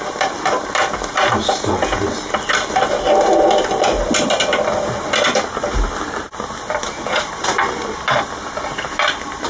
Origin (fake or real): real